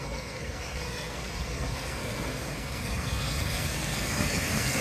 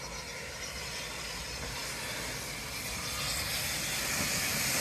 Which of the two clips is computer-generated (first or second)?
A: first